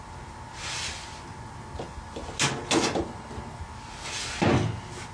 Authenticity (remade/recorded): recorded